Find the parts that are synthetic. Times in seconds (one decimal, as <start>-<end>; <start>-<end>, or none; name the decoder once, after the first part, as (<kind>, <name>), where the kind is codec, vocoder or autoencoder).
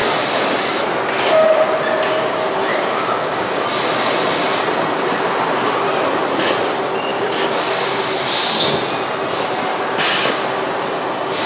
2.7-3.6 (codec, DAC); 7.1-8.0